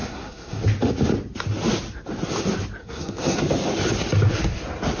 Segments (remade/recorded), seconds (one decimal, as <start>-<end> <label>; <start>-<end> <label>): 0.0-0.6 remade; 0.6-2.8 recorded; 2.8-3.4 remade; 3.4-5.0 recorded